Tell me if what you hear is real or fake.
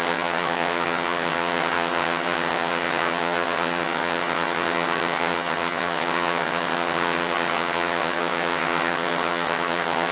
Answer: fake